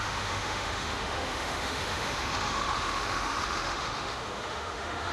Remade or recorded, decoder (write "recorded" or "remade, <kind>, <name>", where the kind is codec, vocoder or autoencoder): remade, autoencoder, DAC-VAE